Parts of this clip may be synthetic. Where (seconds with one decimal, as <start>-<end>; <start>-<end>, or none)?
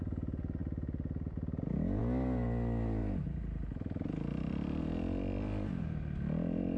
3.0-4.8